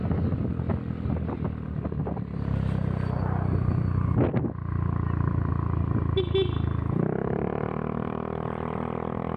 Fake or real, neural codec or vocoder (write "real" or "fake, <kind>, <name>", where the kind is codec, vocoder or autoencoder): real